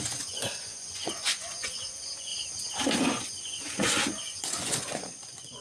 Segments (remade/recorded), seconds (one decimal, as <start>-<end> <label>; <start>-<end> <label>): 0.0-2.3 remade; 2.3-3.0 recorded; 3.0-5.6 remade